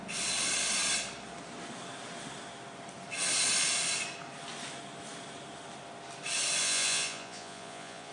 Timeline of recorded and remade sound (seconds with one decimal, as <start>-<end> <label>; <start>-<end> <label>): 0.0-6.6 recorded; 6.6-8.1 remade

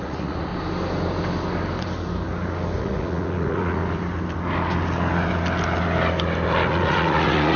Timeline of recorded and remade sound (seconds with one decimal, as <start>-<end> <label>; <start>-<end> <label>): 0.0-0.5 remade; 0.5-2.8 recorded; 2.8-3.8 remade; 3.8-6.7 recorded; 6.7-7.6 remade

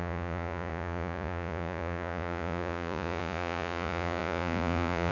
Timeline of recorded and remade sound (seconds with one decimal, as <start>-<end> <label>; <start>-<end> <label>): 0.0-5.1 remade

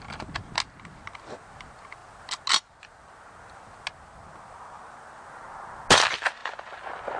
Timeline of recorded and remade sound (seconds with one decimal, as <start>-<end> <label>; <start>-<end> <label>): 0.0-7.2 recorded

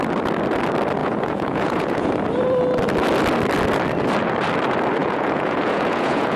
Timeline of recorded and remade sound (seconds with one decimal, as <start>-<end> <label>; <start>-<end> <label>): 0.0-1.0 recorded; 1.0-2.1 remade; 2.1-5.0 recorded; 5.0-6.4 remade

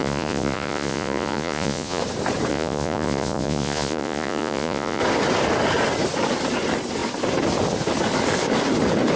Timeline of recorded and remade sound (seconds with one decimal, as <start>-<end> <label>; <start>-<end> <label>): 0.0-2.0 remade; 2.0-2.5 recorded; 2.5-5.0 remade; 5.0-9.2 recorded